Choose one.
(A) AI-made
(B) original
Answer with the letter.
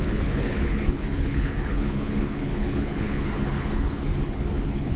A